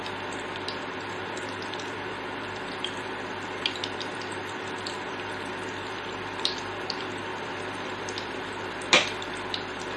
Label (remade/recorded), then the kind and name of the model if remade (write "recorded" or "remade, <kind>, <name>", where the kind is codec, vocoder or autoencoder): remade, vocoder, BigVGAN v2